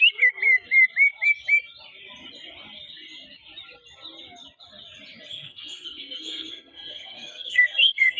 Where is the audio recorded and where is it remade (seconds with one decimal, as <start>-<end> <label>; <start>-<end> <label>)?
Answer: 0.0-5.3 recorded; 5.3-8.2 remade